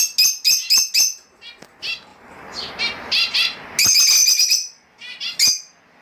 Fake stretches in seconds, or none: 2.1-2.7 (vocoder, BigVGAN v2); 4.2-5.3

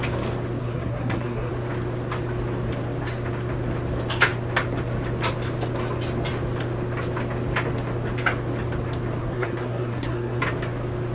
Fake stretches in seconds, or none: 0.6-1.5 (codec, SNAC); 9.2-10.4

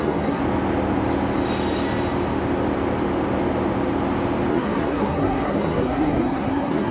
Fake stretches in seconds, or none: 0.0-0.4 (codec, SNAC); 4.5-6.9

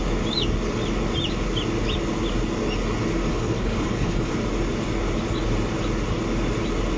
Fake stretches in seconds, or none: 3.3-4.3 (codec, HILCodec)

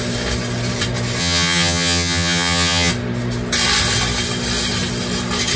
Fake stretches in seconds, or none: 1.2-2.9 (vocoder, HiFi-GAN)